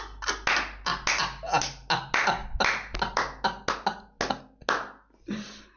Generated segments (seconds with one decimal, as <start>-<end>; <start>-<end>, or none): none